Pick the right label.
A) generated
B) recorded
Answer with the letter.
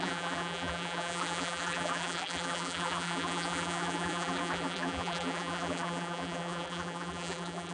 A